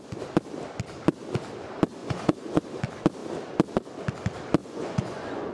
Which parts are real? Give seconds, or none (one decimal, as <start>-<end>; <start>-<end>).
0.0-2.0; 2.6-4.6